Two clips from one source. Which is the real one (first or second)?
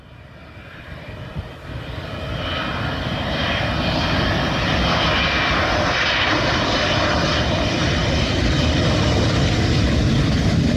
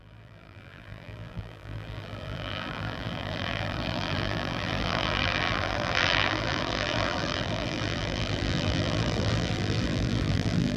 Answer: first